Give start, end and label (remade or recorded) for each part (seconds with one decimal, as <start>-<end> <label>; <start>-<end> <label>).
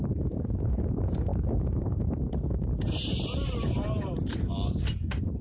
0.0-5.4 remade